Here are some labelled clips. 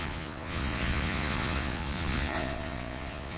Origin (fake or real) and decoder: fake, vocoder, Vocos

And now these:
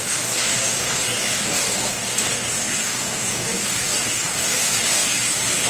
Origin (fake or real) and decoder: fake, codec, DAC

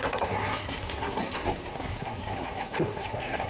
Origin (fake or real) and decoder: fake, codec, SNAC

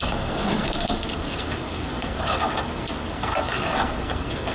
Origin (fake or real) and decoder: fake, codec, SNAC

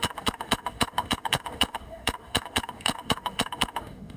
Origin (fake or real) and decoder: fake, autoencoder, DAC-VAE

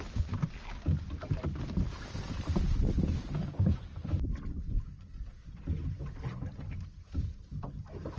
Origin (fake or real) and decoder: real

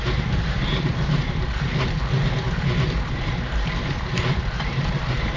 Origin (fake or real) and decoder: fake, vocoder, BigVGAN v2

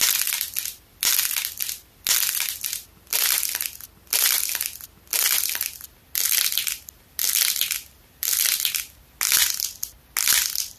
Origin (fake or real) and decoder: real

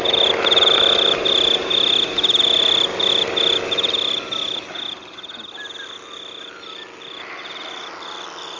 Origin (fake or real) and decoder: real